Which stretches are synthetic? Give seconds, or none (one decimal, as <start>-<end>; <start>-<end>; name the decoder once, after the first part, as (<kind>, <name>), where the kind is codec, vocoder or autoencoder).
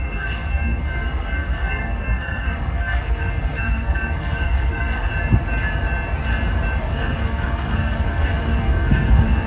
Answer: 0.0-5.1 (codec, SNAC); 6.8-9.5